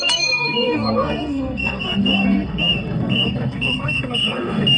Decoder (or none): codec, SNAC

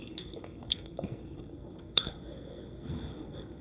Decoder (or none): codec, SNAC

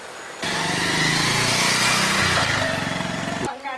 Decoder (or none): none